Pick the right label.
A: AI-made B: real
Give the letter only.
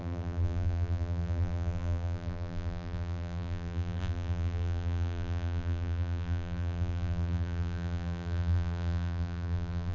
A